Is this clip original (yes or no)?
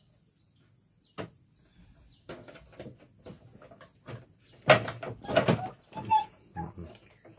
yes